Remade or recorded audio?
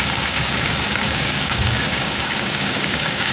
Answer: remade